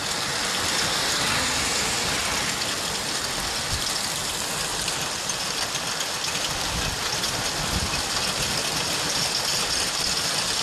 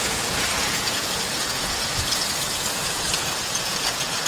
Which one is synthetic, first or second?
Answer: second